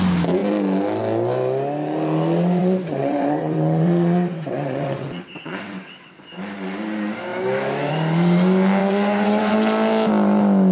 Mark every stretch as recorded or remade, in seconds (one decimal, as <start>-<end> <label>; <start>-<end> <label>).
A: 0.0-2.6 recorded; 2.6-6.2 remade; 6.2-8.8 recorded; 8.8-9.5 remade; 9.5-10.7 recorded